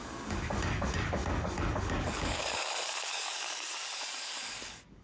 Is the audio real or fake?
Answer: fake